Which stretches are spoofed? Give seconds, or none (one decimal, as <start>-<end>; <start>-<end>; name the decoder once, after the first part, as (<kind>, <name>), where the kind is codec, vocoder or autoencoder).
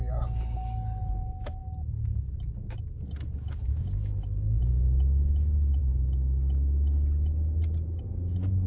none